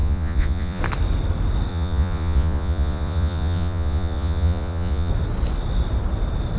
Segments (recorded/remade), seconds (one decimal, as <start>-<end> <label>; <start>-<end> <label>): 0.0-0.8 remade; 0.8-1.7 recorded; 1.7-5.1 remade; 5.1-6.6 recorded